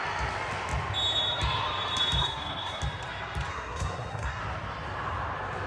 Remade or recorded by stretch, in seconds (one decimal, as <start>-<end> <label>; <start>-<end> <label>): 0.0-2.2 recorded; 2.2-2.8 remade; 2.8-3.5 recorded; 3.5-4.4 remade; 4.4-5.7 recorded